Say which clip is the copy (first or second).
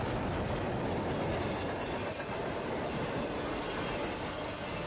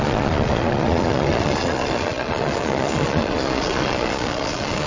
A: second